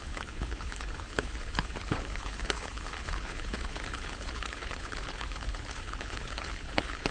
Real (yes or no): no